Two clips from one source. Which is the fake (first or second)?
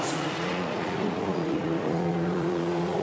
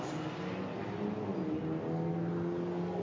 first